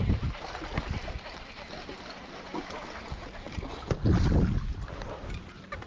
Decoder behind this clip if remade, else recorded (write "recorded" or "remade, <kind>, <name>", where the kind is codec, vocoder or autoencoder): recorded